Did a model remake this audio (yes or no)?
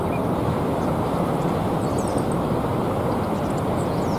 no